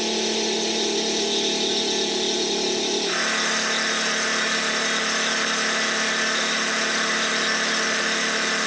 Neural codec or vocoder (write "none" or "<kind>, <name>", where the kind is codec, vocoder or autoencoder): none